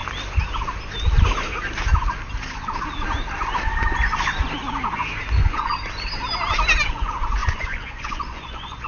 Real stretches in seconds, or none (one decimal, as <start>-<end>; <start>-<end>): 0.0-5.3; 5.7-6.9